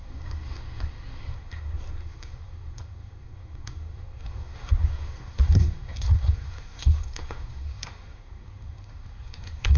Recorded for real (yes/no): no